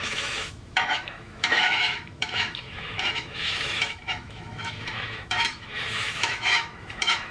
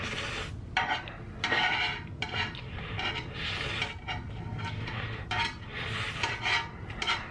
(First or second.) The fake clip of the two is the first